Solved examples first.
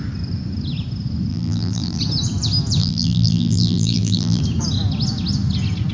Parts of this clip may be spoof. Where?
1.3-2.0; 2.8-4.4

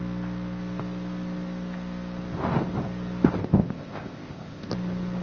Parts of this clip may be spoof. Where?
3.4-4.7

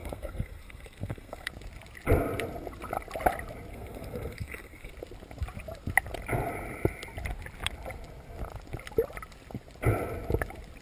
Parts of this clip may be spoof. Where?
0.0-1.5; 3.7-4.9

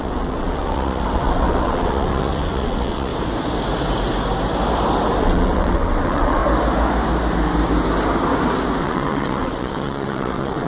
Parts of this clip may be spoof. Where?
0.0-3.1; 5.2-6.4; 8.8-10.7

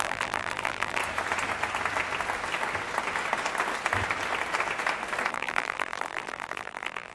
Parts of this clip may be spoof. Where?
0.0-1.0; 5.3-7.1

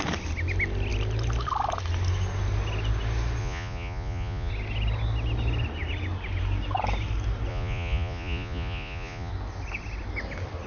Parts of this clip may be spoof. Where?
3.4-4.5; 7.5-9.3

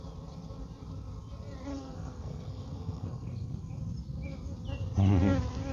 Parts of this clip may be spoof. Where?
1.7-3.7

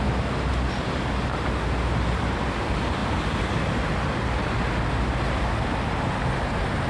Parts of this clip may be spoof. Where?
none